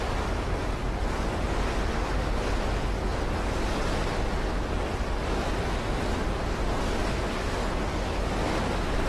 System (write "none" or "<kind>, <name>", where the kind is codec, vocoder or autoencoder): none